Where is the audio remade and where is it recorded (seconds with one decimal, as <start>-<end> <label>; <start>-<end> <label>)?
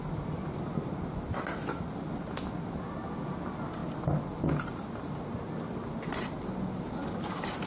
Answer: 0.0-7.7 recorded